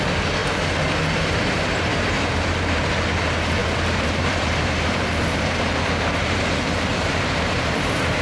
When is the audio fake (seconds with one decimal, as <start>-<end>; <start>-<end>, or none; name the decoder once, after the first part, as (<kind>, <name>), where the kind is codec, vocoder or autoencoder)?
1.9-2.9 (vocoder, BigVGAN v2); 3.6-5.6; 6.9-8.2